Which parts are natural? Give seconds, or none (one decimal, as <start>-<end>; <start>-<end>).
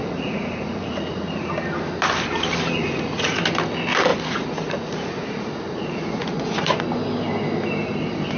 1.5-2.8; 3.4-4.1; 6.8-8.4